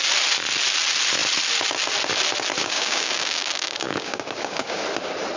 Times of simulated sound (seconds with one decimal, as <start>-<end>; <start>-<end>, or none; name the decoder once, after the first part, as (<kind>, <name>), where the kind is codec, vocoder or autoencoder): 2.6-4.8 (codec, DAC)